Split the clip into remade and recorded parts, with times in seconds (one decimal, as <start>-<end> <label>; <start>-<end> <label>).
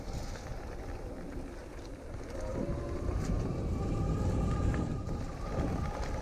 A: 0.0-1.6 recorded; 1.6-5.3 remade; 5.3-6.2 recorded